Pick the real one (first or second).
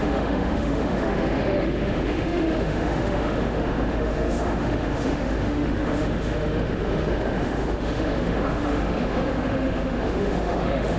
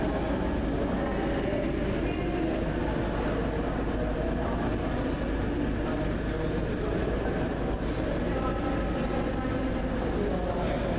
second